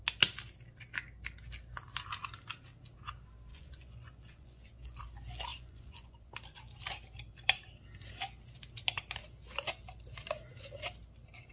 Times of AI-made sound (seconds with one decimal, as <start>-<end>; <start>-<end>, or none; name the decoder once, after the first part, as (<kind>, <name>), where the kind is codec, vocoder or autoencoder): 3.5-5.0 (vocoder, Vocos); 5.5-6.3